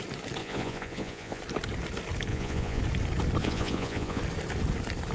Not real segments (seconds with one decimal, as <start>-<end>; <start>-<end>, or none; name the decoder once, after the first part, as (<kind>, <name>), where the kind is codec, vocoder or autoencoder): 0.4-1.4 (vocoder, Vocos); 2.3-2.8; 3.4-4.2